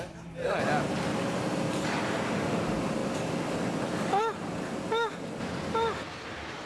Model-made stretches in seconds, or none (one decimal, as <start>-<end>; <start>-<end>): 1.1-2.0